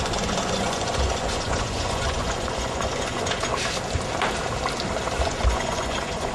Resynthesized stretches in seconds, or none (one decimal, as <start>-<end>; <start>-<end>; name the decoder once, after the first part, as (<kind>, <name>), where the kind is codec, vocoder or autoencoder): 0.0-3.5 (vocoder, Vocos); 5.2-6.3